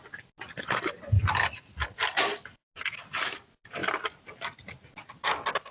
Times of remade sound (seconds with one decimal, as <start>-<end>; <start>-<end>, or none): none